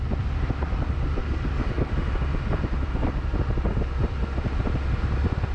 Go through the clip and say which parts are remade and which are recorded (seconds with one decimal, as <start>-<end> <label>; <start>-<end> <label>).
0.0-1.2 recorded; 1.2-1.9 remade; 1.9-5.5 recorded